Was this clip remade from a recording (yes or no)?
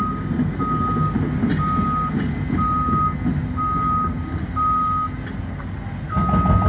no